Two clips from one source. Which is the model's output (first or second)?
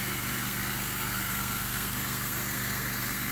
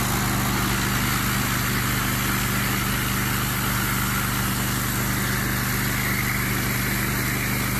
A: first